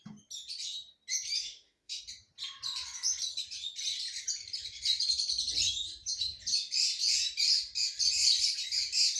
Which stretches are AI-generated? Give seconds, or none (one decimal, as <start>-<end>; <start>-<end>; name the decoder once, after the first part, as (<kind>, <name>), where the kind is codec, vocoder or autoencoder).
1.4-2.0 (autoencoder, DAC-VAE)